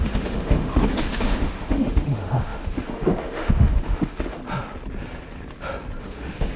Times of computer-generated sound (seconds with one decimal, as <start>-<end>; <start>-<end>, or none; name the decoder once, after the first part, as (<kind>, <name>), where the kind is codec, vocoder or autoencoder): 0.0-4.4 (autoencoder, DAC-VAE); 6.0-6.6